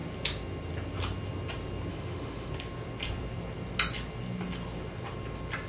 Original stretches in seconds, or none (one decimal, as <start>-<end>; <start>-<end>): 0.0-1.9; 2.5-5.7